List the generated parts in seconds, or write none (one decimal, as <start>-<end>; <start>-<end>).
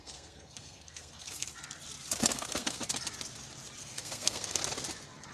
0.0-1.5; 2.2-2.8; 3.8-4.6